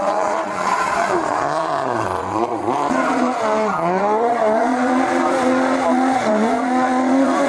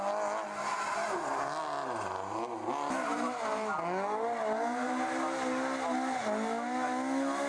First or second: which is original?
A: second